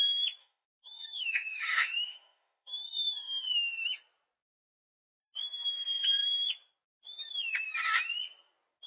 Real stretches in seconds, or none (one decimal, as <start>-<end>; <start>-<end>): 0.0-0.4; 3.8-8.9